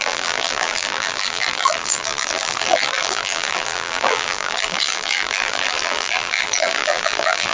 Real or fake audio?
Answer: fake